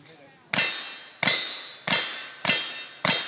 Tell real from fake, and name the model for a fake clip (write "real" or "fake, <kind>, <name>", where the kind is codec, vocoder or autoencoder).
real